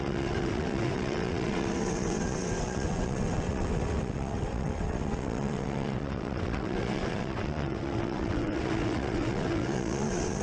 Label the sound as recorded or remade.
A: remade